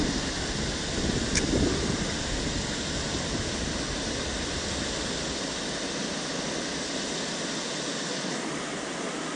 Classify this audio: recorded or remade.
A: recorded